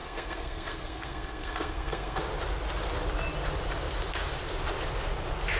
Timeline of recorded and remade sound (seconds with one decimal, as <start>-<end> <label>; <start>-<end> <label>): 0.0-2.2 remade; 2.2-5.6 recorded